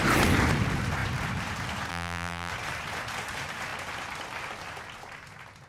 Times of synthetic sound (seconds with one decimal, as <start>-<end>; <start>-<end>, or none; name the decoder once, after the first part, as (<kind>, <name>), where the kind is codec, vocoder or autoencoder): 1.9-2.5 (vocoder, BigVGAN v2)